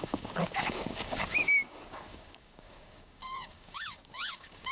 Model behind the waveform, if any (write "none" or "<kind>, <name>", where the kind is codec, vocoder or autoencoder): codec, DAC